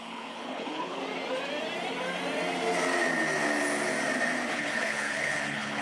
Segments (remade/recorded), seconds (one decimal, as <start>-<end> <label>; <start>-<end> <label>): 0.0-1.0 remade; 1.0-4.5 recorded; 4.5-5.8 remade